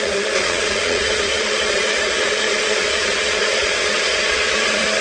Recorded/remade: remade